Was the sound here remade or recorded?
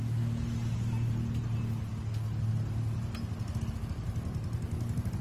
recorded